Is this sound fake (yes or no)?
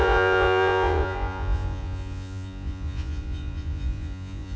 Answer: yes